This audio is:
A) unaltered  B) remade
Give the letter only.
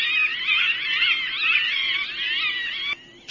A